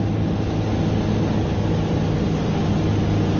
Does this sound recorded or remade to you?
recorded